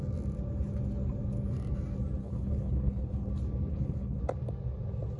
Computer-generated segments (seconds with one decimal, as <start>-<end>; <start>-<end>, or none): 2.2-3.3; 3.7-4.2